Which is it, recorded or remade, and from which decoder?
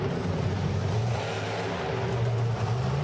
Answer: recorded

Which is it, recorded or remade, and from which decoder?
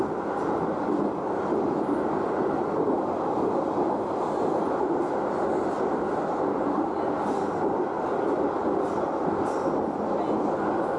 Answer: recorded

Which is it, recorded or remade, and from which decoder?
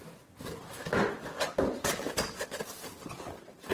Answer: recorded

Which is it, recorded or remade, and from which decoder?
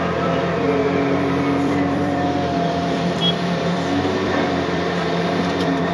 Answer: remade, vocoder, BigVGAN v2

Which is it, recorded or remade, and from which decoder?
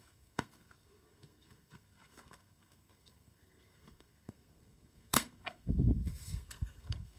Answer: remade, codec, SNAC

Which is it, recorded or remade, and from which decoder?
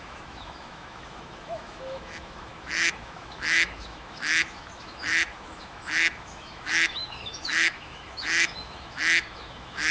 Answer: remade, autoencoder, DAC-VAE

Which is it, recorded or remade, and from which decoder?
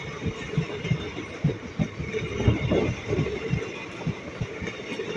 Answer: recorded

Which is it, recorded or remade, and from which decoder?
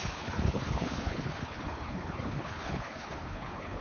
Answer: remade, codec, HILCodec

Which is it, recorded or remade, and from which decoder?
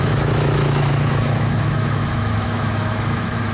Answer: remade, autoencoder, DAC-VAE